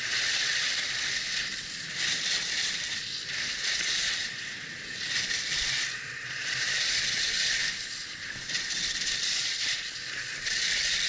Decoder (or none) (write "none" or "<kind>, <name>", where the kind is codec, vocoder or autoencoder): none